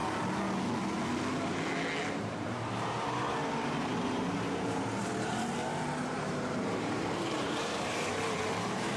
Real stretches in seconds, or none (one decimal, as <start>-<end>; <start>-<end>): 0.0-2.2